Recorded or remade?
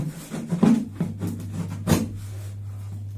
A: recorded